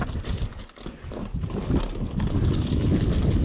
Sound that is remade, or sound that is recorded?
recorded